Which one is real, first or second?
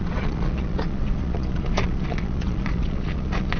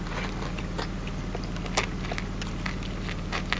second